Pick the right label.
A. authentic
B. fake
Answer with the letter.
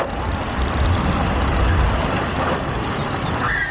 A